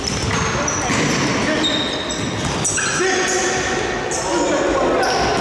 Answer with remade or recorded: recorded